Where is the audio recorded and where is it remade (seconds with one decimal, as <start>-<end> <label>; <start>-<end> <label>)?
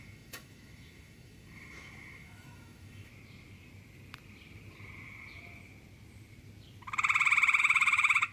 0.0-3.1 remade; 3.1-7.6 recorded; 7.6-8.3 remade